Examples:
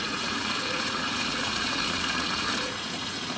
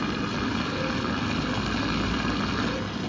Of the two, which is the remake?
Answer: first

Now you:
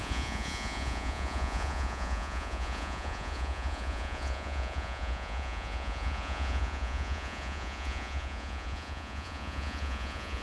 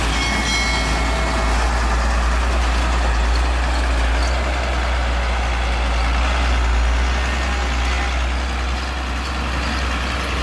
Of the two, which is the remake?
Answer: first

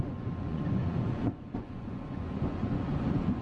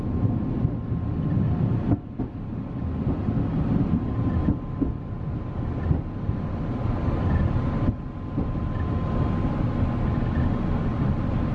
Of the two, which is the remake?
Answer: first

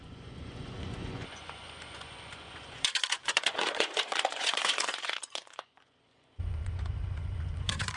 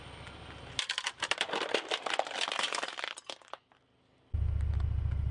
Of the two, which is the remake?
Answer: first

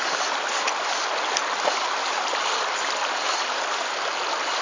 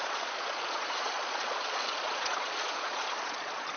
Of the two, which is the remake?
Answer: second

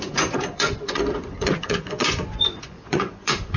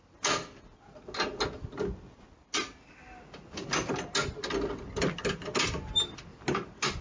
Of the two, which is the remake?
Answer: first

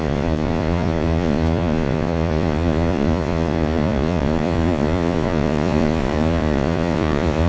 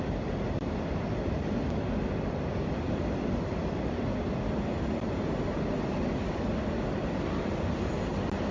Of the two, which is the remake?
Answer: first